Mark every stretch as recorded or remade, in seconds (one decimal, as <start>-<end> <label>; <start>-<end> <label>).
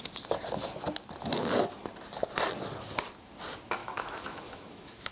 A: 0.0-3.8 recorded; 3.8-5.1 remade